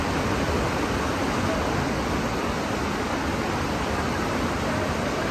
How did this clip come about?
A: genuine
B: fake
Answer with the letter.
A